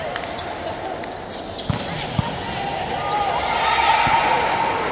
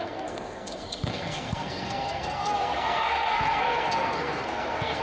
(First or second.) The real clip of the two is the first